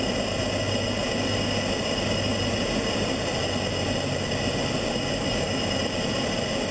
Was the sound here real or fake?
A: real